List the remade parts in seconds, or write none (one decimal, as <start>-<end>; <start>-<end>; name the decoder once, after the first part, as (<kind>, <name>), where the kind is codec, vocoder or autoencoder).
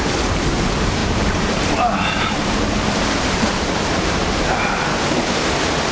1.0-4.4 (vocoder, BigVGAN v2)